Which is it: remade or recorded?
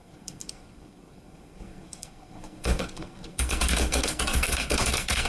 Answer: remade